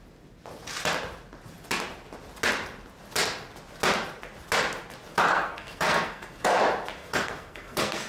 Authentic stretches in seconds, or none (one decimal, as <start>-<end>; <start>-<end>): 0.0-5.3; 6.6-7.0